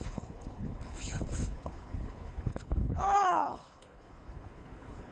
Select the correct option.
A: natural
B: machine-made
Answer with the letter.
B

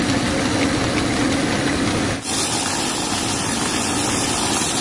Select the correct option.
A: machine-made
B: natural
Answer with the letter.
B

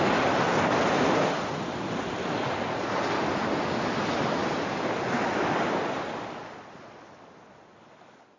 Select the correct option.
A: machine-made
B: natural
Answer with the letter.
B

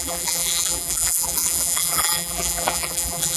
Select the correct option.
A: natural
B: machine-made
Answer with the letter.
B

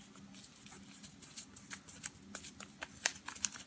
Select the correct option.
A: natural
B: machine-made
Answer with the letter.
A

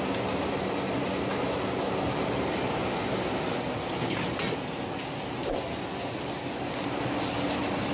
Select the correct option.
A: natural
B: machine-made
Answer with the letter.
A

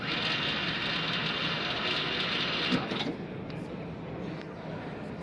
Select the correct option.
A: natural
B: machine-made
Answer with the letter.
A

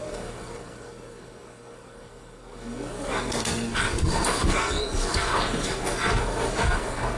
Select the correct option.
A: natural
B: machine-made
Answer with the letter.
B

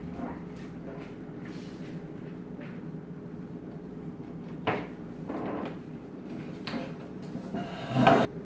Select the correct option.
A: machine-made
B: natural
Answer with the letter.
A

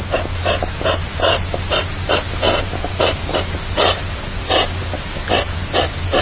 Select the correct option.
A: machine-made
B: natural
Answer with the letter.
B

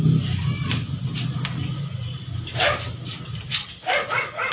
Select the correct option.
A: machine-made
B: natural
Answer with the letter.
B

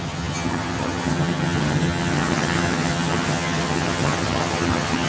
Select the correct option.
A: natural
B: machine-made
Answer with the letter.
B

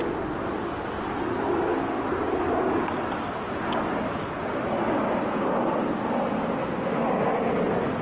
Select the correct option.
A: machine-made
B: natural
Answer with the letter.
B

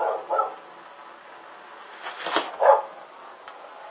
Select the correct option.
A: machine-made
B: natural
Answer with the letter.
B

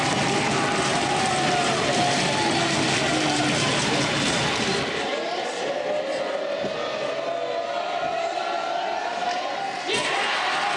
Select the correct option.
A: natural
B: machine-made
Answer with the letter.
A